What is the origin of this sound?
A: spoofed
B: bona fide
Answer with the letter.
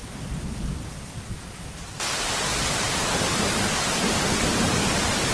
B